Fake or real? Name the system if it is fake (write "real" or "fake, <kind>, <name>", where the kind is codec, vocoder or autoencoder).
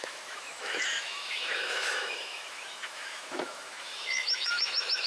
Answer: fake, autoencoder, DAC-VAE